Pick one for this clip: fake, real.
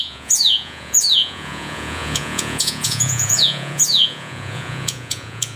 fake